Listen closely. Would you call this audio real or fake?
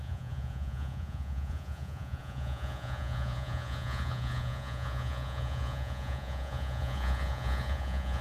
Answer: fake